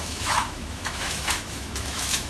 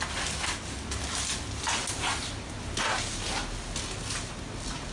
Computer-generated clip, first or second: first